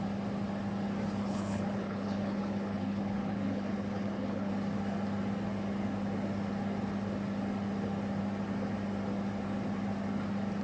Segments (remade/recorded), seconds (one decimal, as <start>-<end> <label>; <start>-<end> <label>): 0.0-1.2 recorded; 1.2-4.5 remade; 4.5-10.6 recorded